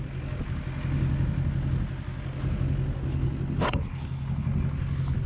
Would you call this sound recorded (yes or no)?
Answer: yes